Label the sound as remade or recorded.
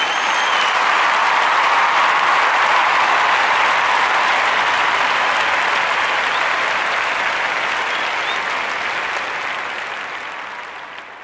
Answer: recorded